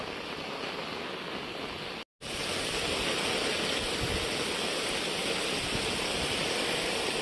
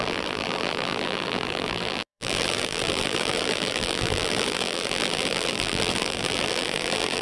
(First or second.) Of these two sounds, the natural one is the first